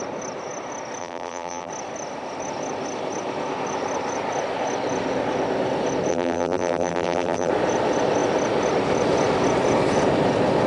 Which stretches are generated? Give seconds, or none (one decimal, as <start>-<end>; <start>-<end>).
1.0-1.7; 6.1-7.5